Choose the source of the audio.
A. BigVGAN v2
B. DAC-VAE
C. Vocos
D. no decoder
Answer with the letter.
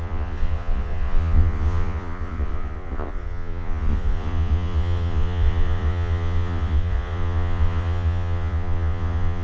C